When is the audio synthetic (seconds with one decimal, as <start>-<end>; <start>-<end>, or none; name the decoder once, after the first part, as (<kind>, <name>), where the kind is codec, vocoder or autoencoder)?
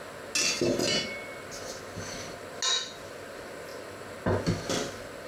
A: none